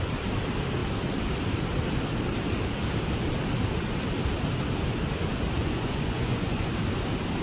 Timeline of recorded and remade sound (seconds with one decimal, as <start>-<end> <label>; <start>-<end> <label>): 0.0-5.6 recorded; 5.6-6.7 remade; 6.7-7.4 recorded